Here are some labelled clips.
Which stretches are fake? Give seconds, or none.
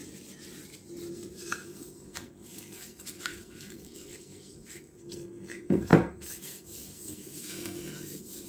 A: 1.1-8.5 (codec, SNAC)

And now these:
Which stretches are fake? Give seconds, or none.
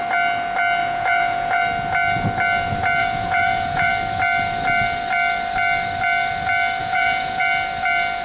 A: 0.8-1.6 (vocoder, Vocos); 3.0-3.9; 6.8-7.4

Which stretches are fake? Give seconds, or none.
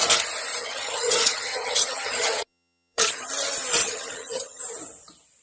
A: 0.6-3.3 (vocoder, HiFi-GAN); 3.8-4.6